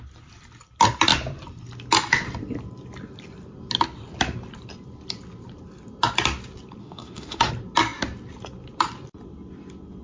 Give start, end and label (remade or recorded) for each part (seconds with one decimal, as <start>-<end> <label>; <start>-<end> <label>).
0.0-6.8 recorded; 6.8-7.5 remade; 7.5-10.0 recorded